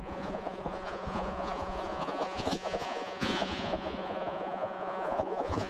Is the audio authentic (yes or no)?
no